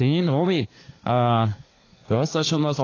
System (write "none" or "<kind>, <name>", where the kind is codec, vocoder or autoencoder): codec, SNAC